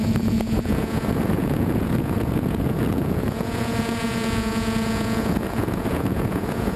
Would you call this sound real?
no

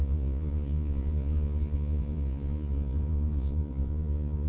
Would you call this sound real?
no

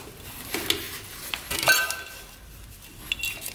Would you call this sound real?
yes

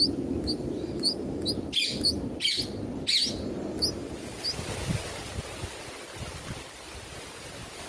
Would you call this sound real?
yes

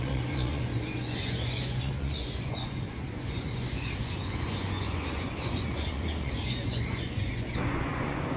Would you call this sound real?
no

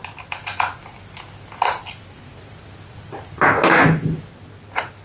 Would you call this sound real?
yes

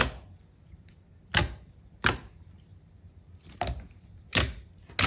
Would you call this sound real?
yes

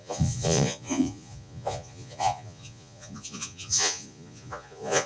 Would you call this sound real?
no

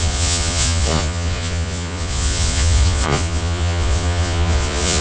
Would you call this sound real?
no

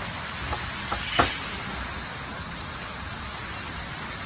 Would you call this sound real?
yes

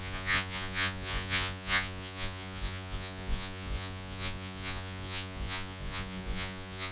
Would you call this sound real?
no